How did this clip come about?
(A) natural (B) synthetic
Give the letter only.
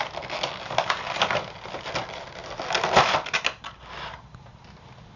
A